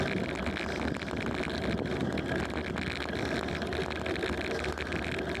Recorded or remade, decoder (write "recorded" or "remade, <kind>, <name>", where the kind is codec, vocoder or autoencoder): recorded